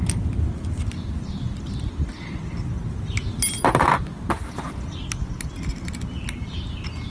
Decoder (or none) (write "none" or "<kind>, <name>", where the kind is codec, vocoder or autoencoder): none